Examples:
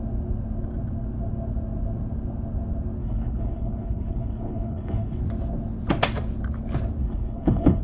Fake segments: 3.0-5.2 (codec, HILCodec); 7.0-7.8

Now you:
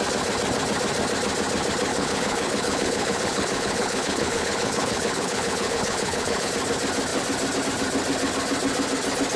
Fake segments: 1.9-6.5 (codec, HILCodec)

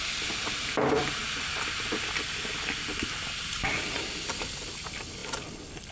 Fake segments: none

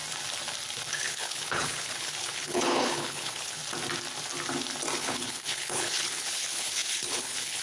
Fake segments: 1.0-3.6 (codec, HILCodec); 5.0-7.6